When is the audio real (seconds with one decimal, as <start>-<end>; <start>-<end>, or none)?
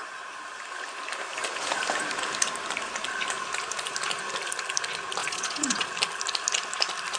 0.0-5.2; 5.9-7.2